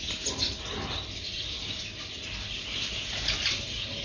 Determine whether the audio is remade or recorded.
recorded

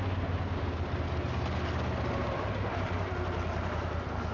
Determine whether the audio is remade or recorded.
recorded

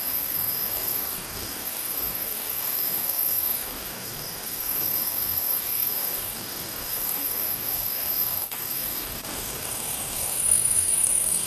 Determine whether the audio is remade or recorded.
remade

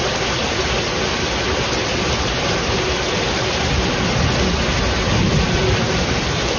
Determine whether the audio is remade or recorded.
recorded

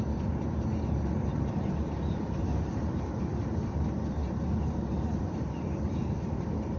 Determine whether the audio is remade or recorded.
remade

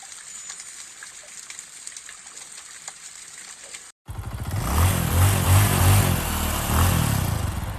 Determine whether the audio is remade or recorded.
recorded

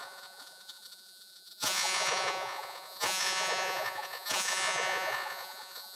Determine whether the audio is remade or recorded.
remade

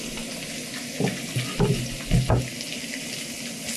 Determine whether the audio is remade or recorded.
recorded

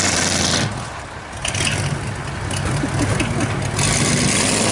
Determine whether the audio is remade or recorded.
recorded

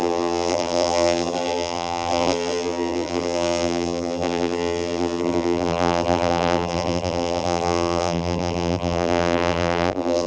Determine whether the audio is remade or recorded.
remade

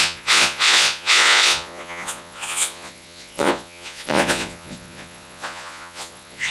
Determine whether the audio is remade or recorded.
remade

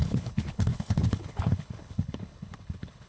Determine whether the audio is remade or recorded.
remade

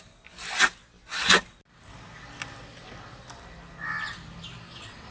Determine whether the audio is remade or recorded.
recorded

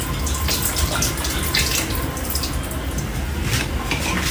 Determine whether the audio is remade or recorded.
recorded